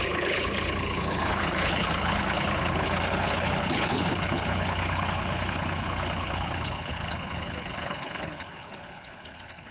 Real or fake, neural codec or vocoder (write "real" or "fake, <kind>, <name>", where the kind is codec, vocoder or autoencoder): fake, codec, HILCodec